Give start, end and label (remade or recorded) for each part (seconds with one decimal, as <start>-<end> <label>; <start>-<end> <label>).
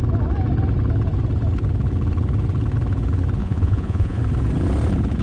0.0-3.4 recorded; 3.4-4.2 remade; 4.2-5.2 recorded